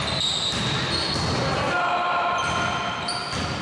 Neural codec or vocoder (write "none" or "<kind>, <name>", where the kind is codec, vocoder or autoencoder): none